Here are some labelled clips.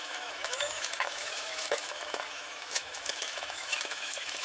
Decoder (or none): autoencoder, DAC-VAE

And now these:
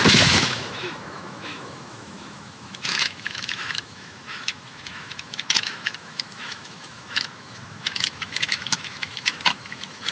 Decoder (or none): autoencoder, DAC-VAE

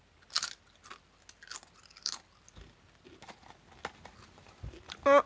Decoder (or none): none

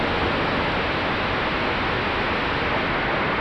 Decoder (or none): none